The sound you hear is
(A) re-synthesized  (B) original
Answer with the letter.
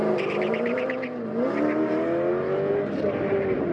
B